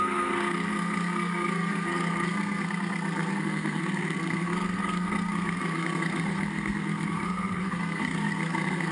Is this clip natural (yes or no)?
no